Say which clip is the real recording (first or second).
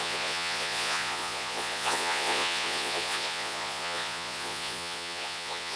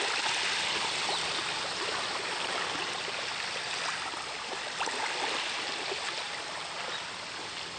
second